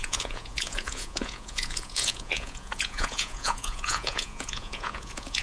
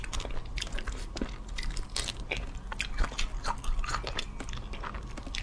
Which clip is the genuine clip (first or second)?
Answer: second